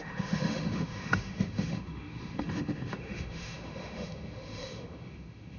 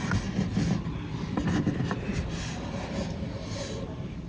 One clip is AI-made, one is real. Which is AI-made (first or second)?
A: first